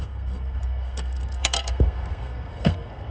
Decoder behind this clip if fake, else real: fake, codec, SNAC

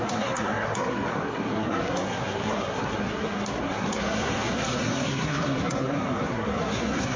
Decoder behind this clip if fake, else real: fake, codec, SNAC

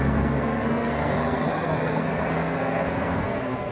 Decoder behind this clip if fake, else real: fake, codec, SNAC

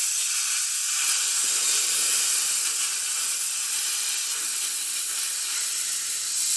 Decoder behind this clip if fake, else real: real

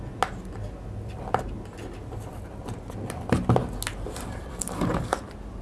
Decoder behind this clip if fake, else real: real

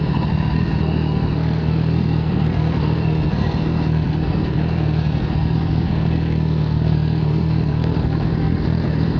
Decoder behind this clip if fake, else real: fake, codec, SNAC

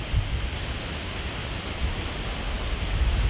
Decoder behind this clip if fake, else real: real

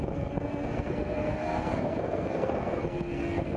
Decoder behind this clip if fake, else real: fake, codec, SNAC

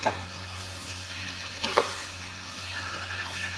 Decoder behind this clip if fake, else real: fake, codec, SNAC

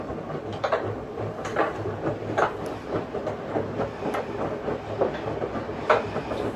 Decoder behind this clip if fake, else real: real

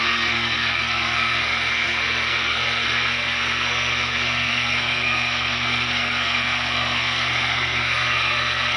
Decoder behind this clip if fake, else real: fake, codec, SNAC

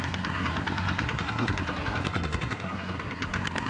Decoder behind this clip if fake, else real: fake, codec, SNAC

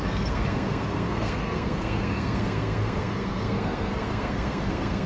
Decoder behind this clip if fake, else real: fake, codec, SNAC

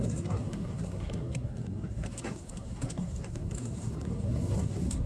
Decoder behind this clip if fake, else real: fake, codec, SNAC